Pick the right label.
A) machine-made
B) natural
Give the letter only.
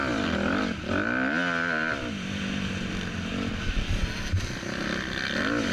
B